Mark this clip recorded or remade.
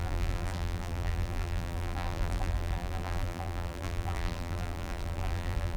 remade